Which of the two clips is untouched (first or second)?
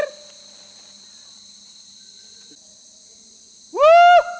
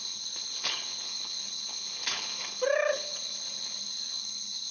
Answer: first